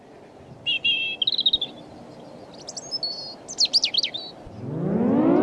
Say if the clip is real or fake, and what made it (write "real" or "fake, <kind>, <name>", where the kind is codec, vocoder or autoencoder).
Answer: real